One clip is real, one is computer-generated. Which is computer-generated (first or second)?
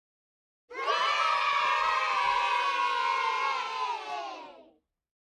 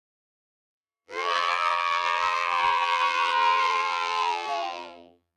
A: second